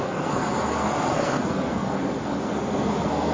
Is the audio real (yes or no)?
no